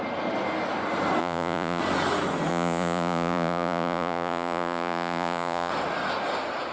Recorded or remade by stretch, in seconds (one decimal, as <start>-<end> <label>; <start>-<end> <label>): 0.0-1.2 recorded; 1.2-1.8 remade; 1.8-2.5 recorded; 2.5-5.7 remade; 5.7-6.7 recorded